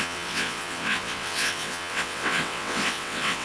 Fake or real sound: fake